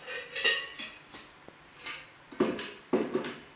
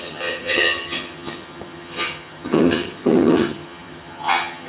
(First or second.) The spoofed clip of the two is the second